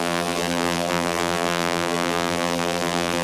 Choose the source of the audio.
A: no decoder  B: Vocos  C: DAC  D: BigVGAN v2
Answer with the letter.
D